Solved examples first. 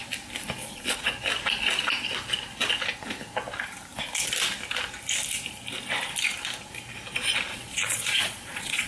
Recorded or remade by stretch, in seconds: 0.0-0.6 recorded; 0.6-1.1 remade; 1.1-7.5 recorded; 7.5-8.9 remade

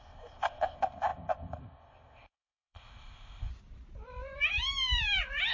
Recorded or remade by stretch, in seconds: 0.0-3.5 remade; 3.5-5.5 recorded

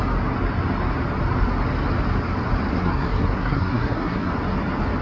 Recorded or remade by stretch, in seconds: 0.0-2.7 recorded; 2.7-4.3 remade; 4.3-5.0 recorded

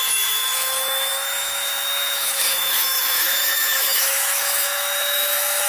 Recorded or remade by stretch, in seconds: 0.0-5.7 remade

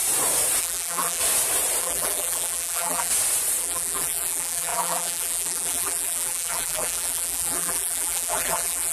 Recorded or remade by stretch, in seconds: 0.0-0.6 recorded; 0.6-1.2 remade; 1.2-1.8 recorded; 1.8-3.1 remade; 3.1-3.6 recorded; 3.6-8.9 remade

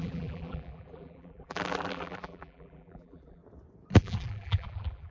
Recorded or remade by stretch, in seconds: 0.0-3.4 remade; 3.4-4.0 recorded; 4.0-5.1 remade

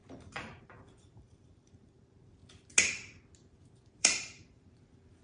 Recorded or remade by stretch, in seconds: 0.0-2.4 remade; 2.4-4.0 recorded; 4.0-5.2 remade

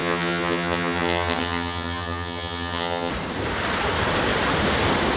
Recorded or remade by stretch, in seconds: 0.0-3.1 remade; 3.1-5.2 recorded